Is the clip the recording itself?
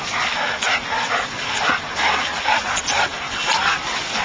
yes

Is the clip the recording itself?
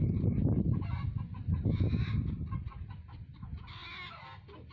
yes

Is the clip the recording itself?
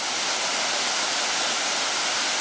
yes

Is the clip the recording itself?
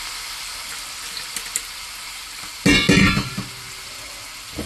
yes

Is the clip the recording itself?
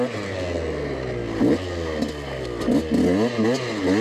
yes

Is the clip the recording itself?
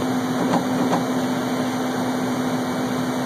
yes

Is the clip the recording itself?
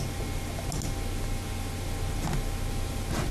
yes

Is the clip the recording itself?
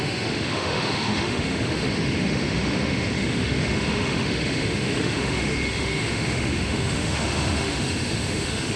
no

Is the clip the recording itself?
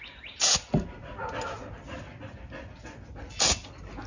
yes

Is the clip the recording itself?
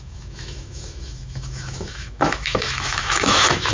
no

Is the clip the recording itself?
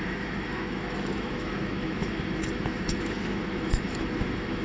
no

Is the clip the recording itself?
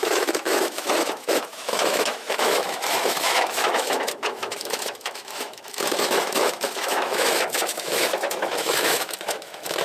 no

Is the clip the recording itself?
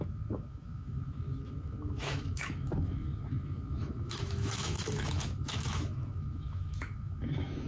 no